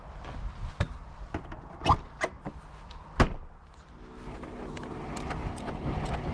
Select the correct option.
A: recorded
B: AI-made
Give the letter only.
A